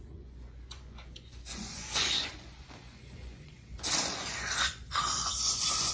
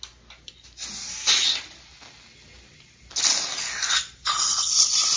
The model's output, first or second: first